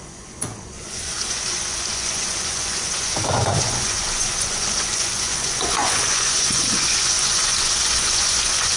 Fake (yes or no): yes